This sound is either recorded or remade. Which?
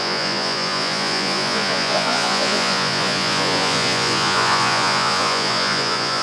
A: remade